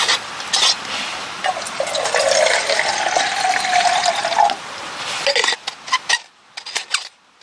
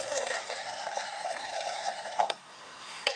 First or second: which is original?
first